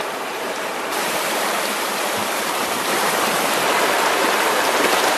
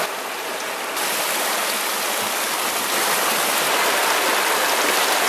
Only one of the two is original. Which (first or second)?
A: second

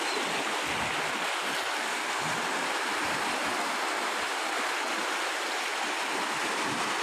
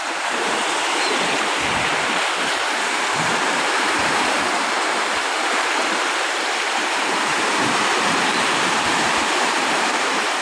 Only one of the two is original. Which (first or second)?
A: first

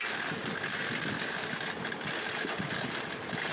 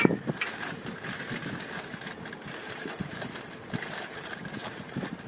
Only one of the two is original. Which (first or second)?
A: first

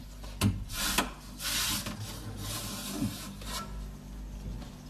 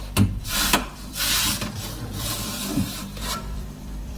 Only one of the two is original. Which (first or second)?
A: first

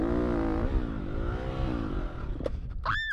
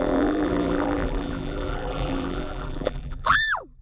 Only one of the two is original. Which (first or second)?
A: first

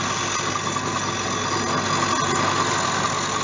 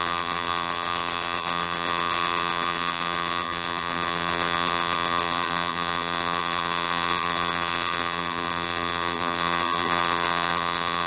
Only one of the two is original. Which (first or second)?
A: first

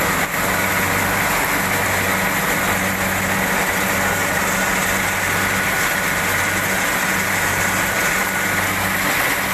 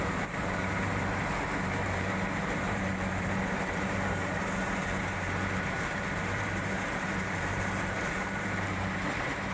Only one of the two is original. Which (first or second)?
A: first